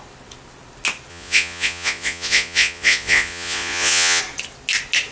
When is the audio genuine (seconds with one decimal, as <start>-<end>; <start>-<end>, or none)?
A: 0.0-1.1; 4.2-5.1